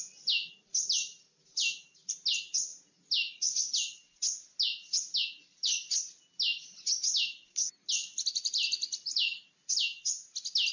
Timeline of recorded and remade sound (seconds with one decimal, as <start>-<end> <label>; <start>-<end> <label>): 0.0-10.7 recorded